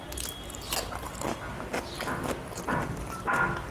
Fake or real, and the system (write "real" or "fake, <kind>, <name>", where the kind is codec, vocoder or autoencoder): real